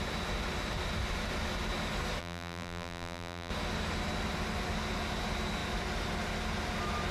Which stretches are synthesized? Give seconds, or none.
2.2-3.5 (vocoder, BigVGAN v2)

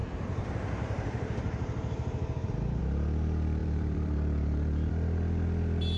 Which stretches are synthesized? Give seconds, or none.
0.0-2.8 (vocoder, BigVGAN v2); 3.6-4.9